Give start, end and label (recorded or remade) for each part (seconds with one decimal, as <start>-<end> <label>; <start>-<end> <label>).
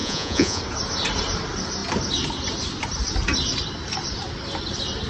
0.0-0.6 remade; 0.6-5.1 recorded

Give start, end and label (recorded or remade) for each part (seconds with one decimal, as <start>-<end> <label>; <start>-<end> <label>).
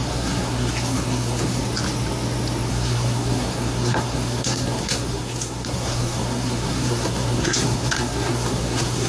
0.0-1.6 remade; 1.6-2.7 recorded; 2.7-9.1 remade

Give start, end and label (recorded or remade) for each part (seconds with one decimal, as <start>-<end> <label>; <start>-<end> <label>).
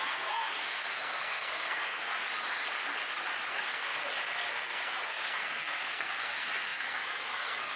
0.0-2.2 remade; 2.2-3.5 recorded; 3.5-4.0 remade; 4.0-4.5 recorded; 4.5-7.8 remade